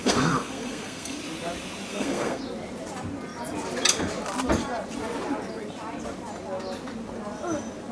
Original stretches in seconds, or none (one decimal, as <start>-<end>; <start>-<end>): 1.2-1.9; 2.4-7.9